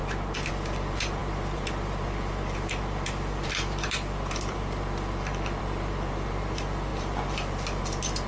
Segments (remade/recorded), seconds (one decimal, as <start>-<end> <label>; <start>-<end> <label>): 0.0-8.3 remade